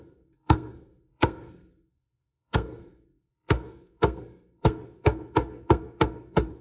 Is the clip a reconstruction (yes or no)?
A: yes